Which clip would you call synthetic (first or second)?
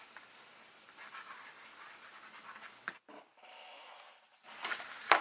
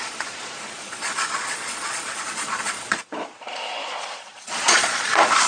second